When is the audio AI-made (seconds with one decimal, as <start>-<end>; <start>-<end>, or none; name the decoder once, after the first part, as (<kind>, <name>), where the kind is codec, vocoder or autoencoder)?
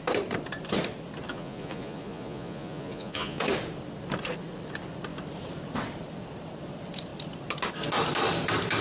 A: 1.3-3.4 (vocoder, Vocos)